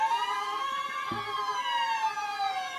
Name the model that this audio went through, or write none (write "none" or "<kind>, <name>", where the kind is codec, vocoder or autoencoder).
none